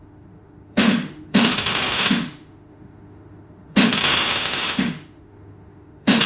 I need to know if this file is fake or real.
fake